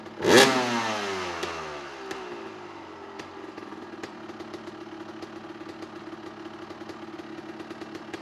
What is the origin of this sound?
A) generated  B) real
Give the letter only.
B